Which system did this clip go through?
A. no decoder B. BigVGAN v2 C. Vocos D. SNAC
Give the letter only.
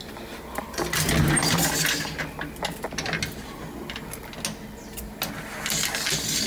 A